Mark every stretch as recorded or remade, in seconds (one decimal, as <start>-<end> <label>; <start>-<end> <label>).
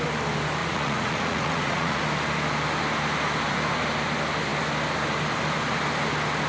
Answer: 0.0-0.6 recorded; 0.6-2.0 remade; 2.0-6.5 recorded